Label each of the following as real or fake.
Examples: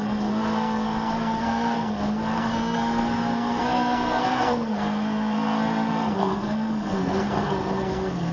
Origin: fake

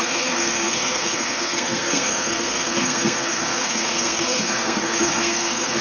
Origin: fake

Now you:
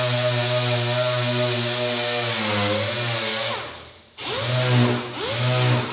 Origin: real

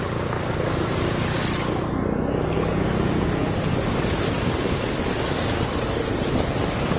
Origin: real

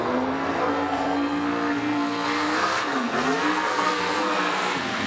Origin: fake